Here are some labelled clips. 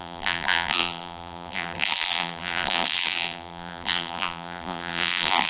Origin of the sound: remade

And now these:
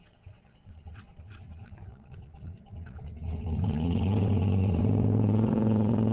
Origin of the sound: remade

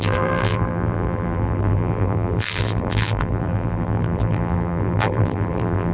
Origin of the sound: remade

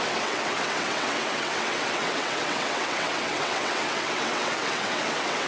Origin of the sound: remade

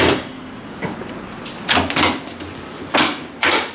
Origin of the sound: recorded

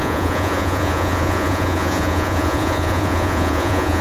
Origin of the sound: remade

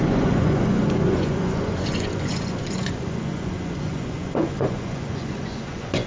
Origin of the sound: remade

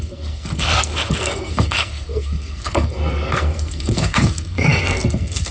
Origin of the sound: remade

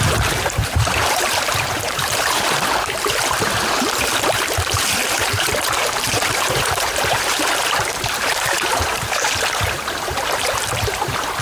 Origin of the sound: remade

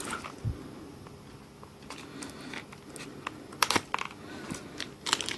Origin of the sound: recorded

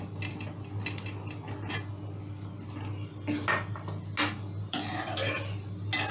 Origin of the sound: recorded